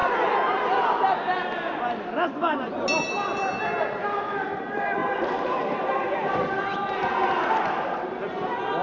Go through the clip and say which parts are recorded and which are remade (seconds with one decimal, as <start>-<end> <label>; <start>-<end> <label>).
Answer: 0.0-4.0 recorded; 4.0-4.6 remade; 4.6-8.8 recorded